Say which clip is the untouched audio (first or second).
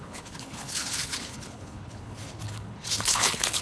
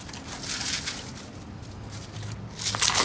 second